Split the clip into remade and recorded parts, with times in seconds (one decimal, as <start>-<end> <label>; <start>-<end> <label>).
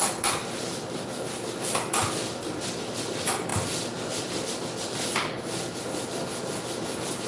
0.0-7.3 recorded